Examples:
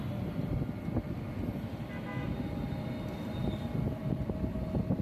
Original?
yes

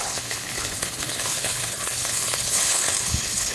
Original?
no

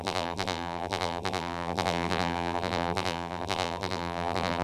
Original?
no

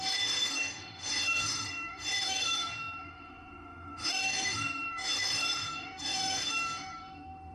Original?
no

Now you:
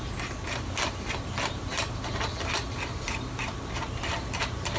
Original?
yes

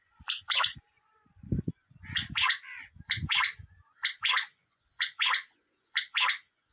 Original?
no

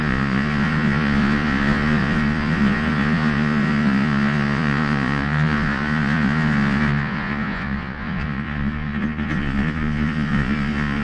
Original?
no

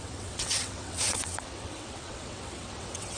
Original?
no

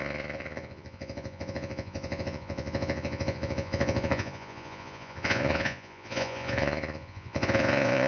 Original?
no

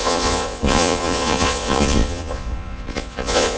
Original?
no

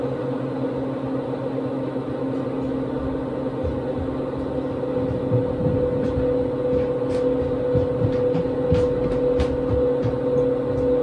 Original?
yes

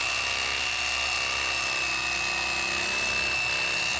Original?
yes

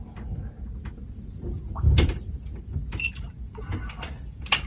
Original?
yes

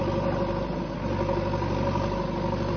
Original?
yes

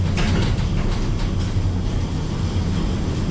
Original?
yes